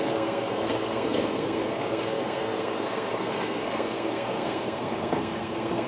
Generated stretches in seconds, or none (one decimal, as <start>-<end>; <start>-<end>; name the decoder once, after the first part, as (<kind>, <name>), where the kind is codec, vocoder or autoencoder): 0.0-5.9 (codec, SNAC)